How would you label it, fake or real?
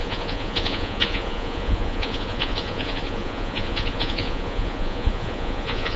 fake